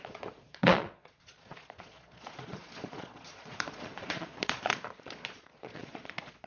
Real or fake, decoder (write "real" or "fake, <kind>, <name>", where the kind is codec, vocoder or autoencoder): fake, vocoder, Vocos